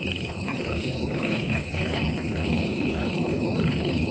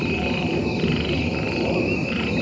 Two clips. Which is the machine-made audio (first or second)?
first